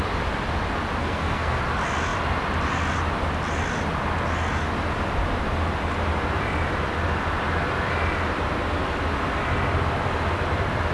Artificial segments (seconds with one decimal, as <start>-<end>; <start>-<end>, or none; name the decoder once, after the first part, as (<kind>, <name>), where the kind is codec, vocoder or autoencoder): 1.0-1.6 (codec, SNAC)